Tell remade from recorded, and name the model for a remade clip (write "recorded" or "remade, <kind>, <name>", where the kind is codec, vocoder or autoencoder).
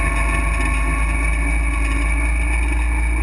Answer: recorded